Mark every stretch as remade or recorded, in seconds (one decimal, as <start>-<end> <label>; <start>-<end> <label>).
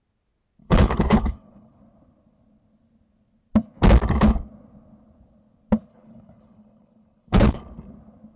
0.0-0.6 recorded; 0.6-1.8 remade; 1.8-5.9 recorded; 5.9-7.6 remade; 7.6-8.4 recorded